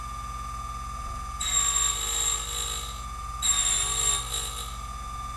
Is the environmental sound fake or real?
real